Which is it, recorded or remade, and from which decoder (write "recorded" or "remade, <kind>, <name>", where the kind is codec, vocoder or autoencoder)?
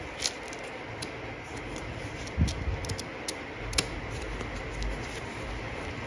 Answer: recorded